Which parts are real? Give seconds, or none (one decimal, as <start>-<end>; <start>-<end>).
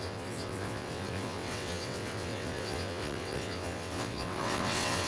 none